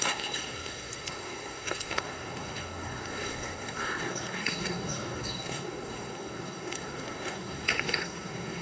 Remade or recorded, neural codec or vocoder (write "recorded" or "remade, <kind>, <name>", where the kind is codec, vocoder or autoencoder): remade, codec, SNAC